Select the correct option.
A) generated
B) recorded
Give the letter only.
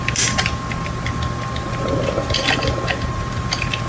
B